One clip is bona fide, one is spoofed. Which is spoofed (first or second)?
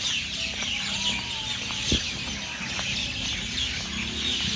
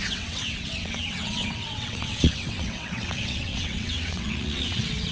second